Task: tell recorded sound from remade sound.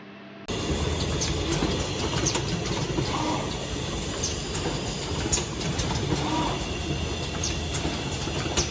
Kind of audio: recorded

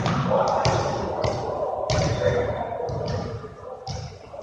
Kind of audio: recorded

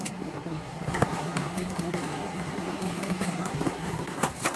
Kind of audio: remade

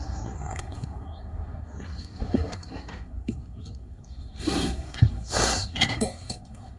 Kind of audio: remade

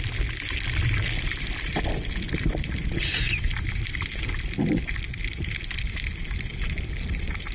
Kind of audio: recorded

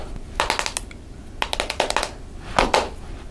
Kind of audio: recorded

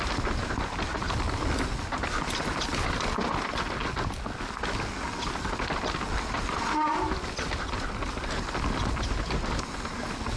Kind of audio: recorded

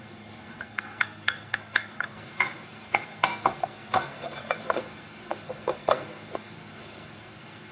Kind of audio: remade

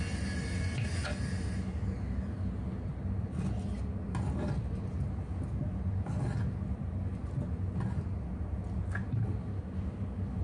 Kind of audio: recorded